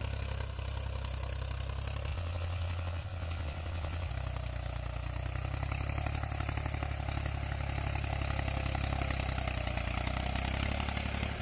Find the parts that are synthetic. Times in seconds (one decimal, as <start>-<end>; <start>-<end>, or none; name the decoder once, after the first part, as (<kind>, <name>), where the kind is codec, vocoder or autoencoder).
2.1-4.1 (vocoder, Vocos)